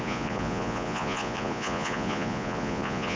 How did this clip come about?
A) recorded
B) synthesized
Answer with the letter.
B